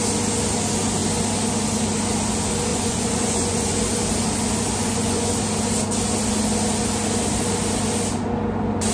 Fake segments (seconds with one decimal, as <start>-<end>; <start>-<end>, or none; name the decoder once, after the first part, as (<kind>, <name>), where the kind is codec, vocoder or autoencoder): 2.7-3.8 (vocoder, Vocos); 4.8-5.3